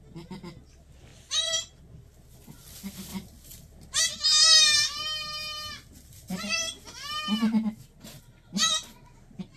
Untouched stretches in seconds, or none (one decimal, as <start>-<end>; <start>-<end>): 0.0-1.1; 1.8-3.1; 4.0-9.6